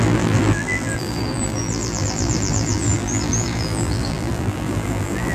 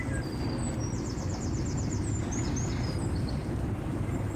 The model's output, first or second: first